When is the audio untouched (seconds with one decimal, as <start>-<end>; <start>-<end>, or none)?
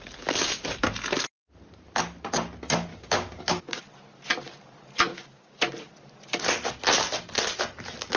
0.0-2.9; 3.8-5.1; 5.6-8.2